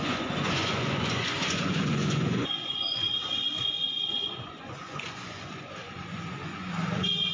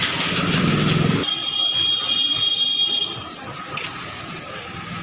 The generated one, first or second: first